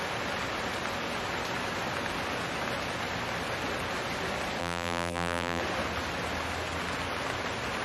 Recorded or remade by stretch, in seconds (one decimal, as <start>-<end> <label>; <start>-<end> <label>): 0.0-4.6 recorded; 4.6-5.6 remade; 5.6-7.8 recorded